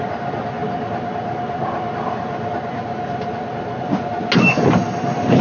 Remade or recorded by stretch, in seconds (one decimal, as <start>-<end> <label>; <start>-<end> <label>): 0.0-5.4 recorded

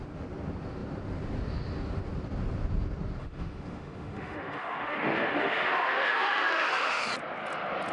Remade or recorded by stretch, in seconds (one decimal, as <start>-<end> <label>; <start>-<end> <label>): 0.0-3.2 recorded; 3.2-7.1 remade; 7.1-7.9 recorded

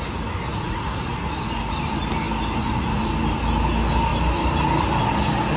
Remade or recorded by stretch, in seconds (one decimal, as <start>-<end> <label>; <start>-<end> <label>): 0.0-0.5 recorded; 0.5-1.9 remade; 1.9-2.6 recorded; 2.6-3.1 remade; 3.1-5.6 recorded